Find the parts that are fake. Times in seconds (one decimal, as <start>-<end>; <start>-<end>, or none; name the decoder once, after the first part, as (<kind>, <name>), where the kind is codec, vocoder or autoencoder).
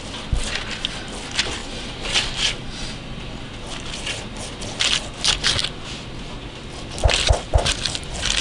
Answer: none